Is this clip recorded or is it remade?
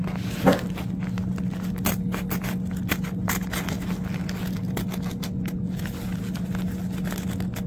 recorded